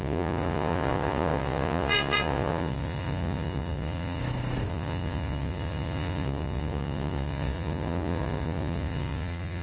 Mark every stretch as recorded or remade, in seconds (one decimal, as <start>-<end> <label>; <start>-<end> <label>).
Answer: 0.0-4.2 remade; 4.2-4.7 recorded; 4.7-9.6 remade

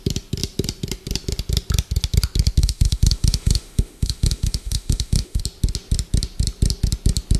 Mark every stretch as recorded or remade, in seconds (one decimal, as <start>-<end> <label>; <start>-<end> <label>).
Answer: 0.0-2.6 recorded; 2.6-5.4 remade; 5.4-7.4 recorded

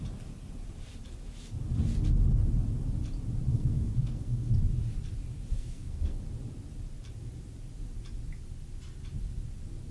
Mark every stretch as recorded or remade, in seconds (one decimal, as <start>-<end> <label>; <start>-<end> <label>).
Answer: 0.0-3.5 recorded; 3.5-4.5 remade; 4.5-5.5 recorded; 5.5-6.2 remade; 6.2-9.9 recorded

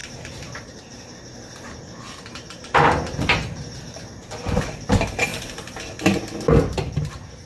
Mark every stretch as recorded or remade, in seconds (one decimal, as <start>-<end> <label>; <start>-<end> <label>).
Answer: 0.0-4.0 remade; 4.0-5.3 recorded; 5.3-5.8 remade; 5.8-7.5 recorded

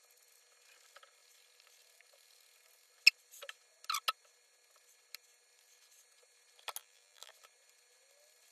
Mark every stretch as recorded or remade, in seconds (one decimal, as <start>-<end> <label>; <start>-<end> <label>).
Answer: 0.0-6.8 recorded; 6.8-7.3 remade; 7.3-8.5 recorded

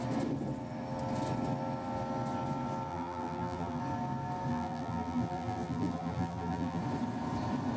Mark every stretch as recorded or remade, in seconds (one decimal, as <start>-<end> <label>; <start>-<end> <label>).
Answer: 0.0-2.9 recorded; 2.9-3.8 remade; 3.8-4.5 recorded; 4.5-6.8 remade; 6.8-7.8 recorded

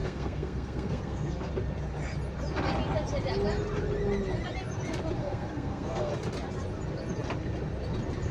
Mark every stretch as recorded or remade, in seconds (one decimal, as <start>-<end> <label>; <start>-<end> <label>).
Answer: 0.0-1.5 remade; 1.5-5.2 recorded; 5.2-6.1 remade; 6.1-8.3 recorded

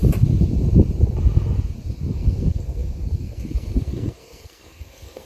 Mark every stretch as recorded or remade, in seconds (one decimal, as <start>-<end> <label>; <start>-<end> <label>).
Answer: 0.0-2.1 recorded; 2.1-5.3 remade